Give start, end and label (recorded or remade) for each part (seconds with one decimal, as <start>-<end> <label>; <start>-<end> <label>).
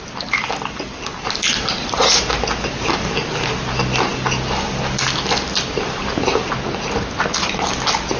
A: 0.0-8.2 recorded